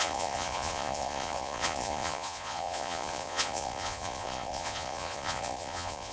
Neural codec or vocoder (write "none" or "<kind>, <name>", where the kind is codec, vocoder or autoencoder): vocoder, Vocos